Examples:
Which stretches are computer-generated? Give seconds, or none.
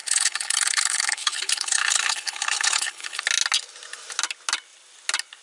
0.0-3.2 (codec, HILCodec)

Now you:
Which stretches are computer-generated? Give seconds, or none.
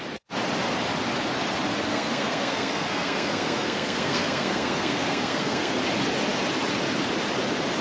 1.9-5.8 (codec, SNAC)